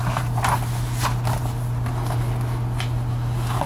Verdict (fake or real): real